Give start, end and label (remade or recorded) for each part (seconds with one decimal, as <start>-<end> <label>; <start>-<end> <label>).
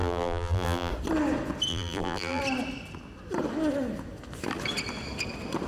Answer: 0.0-0.9 remade; 0.9-1.7 recorded; 1.7-2.4 remade; 2.4-5.7 recorded